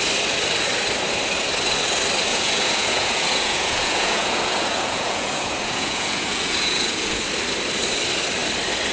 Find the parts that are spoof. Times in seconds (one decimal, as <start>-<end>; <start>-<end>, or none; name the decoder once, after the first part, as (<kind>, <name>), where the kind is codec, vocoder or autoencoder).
2.3-7.2 (vocoder, Vocos)